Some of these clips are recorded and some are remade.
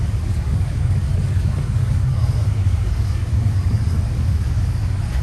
remade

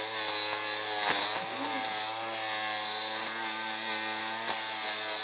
recorded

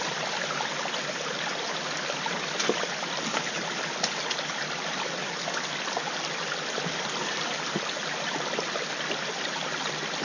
recorded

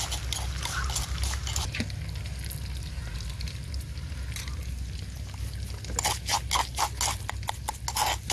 recorded